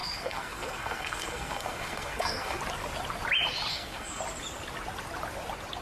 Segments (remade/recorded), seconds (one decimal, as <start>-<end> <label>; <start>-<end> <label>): 0.0-2.6 remade; 2.6-3.7 recorded; 3.7-4.2 remade; 4.2-5.8 recorded